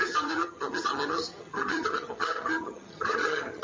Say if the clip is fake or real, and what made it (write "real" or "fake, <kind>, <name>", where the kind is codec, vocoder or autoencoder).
fake, vocoder, HiFi-GAN